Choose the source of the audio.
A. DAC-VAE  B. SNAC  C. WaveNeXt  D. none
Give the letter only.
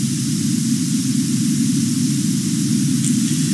D